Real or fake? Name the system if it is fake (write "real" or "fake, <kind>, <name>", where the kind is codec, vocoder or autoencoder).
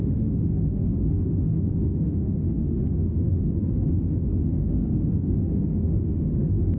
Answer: fake, autoencoder, DAC-VAE